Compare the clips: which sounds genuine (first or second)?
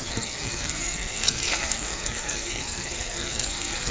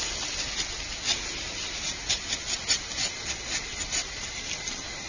second